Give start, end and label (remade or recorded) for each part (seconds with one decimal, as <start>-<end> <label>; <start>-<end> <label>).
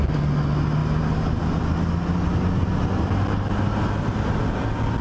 0.0-5.0 recorded